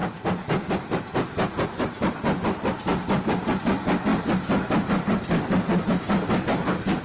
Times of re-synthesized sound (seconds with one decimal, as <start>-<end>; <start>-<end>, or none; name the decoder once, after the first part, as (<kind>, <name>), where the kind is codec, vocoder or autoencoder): none